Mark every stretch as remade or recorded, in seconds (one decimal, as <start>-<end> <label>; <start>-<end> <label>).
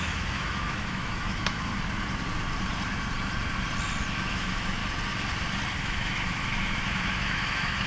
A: 0.0-1.7 remade; 1.7-4.3 recorded; 4.3-4.8 remade; 4.8-5.8 recorded; 5.8-7.9 remade